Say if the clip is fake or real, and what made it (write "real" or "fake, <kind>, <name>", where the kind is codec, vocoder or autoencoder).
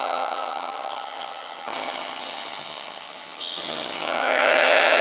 fake, vocoder, HiFi-GAN